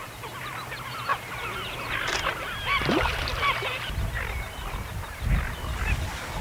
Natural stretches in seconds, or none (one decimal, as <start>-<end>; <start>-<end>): 0.0-1.1; 1.9-2.3; 4.9-6.4